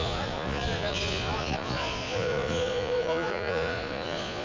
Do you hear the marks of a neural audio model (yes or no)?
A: yes